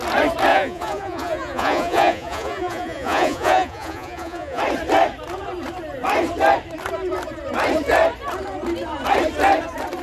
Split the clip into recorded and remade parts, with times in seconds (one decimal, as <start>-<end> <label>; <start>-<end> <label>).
0.0-0.5 recorded; 0.5-4.6 remade; 4.6-10.0 recorded